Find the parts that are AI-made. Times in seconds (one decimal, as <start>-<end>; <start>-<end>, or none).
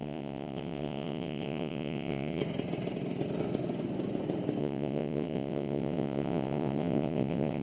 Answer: 0.0-2.4; 4.6-7.6